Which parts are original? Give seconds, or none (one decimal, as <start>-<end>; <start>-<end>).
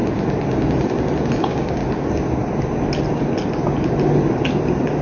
0.0-1.4; 1.8-5.0